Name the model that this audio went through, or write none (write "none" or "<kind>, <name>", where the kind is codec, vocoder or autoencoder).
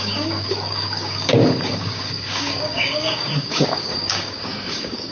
codec, DAC